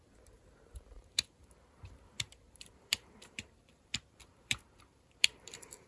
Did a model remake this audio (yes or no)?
yes